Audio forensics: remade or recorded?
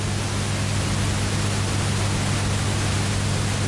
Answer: recorded